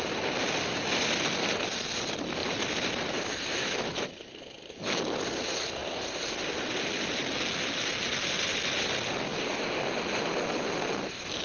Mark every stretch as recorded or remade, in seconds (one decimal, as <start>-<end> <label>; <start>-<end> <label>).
0.0-2.4 recorded; 2.4-5.0 remade; 5.0-11.4 recorded